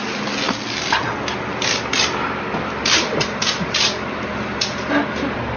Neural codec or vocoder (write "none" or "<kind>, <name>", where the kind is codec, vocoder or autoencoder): none